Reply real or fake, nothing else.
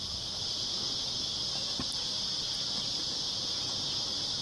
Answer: real